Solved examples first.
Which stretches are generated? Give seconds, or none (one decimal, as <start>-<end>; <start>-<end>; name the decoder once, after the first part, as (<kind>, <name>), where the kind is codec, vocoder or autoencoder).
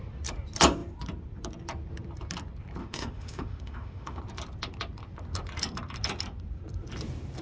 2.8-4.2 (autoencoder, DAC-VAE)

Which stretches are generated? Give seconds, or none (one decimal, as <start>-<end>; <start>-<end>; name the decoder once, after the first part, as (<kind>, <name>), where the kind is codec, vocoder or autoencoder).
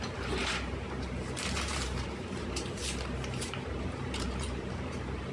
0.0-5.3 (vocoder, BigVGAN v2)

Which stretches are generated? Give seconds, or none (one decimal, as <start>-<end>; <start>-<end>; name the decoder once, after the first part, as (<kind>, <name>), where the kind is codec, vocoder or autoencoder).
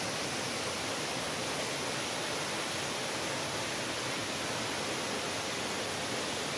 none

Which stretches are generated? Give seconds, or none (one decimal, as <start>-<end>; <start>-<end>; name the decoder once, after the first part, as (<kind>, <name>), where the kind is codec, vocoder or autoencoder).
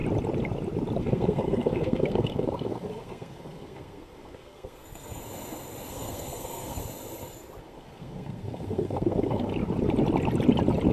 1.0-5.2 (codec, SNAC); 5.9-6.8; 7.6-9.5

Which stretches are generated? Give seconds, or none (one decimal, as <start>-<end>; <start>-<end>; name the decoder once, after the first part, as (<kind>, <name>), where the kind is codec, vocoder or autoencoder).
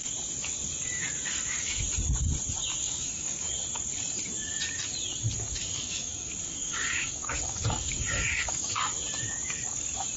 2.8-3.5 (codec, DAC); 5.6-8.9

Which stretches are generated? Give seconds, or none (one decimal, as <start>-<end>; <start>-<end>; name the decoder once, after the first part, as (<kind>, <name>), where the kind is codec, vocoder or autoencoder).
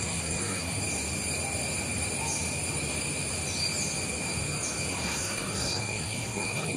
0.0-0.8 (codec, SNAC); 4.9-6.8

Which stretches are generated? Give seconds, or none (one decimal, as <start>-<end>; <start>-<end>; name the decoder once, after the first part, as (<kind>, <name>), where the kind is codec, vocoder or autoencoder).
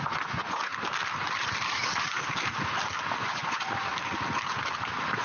0.0-0.7 (vocoder, Vocos); 3.2-3.9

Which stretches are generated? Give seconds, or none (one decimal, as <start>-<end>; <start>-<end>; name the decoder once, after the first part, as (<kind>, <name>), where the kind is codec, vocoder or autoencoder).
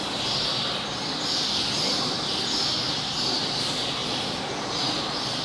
none